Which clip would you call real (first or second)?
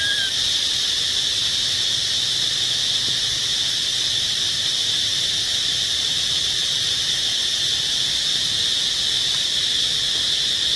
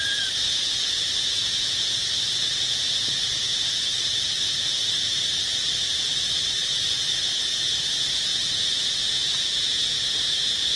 first